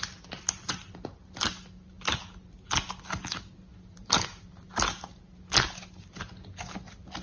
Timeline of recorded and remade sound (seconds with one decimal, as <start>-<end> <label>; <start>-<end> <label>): 0.0-3.7 recorded; 3.7-4.2 remade; 4.2-7.2 recorded